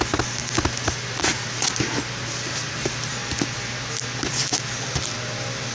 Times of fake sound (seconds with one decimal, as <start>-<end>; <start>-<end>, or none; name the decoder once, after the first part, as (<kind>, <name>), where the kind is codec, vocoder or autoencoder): none